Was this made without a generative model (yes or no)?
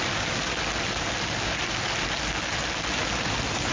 yes